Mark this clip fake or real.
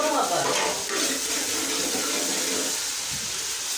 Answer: real